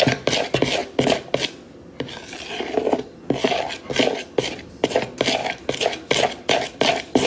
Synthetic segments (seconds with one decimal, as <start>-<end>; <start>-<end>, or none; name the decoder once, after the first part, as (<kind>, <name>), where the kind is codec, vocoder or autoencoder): 0.0-0.8 (vocoder, BigVGAN v2); 4.4-5.4; 6.5-7.3